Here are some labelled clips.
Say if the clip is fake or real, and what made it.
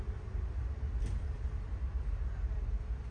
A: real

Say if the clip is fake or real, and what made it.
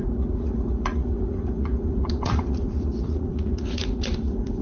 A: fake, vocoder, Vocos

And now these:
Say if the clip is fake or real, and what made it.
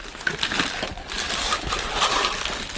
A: real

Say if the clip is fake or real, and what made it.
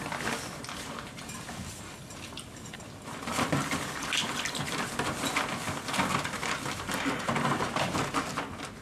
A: real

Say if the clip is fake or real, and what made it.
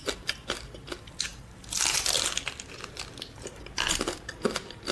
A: real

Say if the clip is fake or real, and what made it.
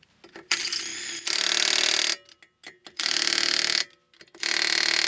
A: real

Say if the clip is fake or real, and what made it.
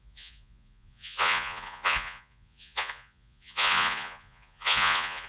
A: fake, vocoder, Vocos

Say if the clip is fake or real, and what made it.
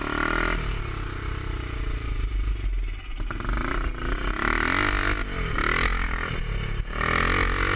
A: real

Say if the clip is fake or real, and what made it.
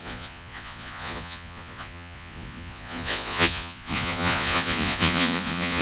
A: fake, vocoder, Vocos